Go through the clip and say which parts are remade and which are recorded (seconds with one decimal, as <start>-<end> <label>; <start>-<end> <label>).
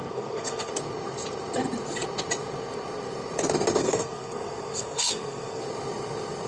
0.0-0.7 remade; 0.7-3.8 recorded; 3.8-5.6 remade; 5.6-6.5 recorded